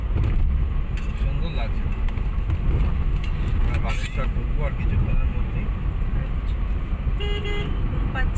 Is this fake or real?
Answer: real